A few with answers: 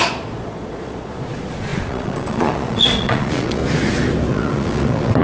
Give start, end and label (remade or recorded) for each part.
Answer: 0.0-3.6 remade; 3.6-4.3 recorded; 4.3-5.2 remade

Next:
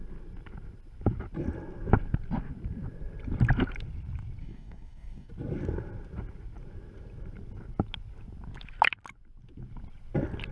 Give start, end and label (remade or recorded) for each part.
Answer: 0.0-4.4 recorded; 4.4-5.3 remade; 5.3-10.5 recorded

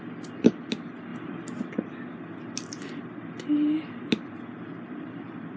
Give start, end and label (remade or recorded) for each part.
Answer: 0.0-2.1 remade; 2.1-4.8 recorded; 4.8-5.6 remade

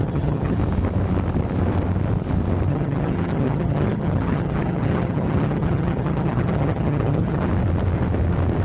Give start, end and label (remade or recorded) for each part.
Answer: 0.0-0.6 remade; 0.6-2.7 recorded; 2.7-7.5 remade; 7.5-8.6 recorded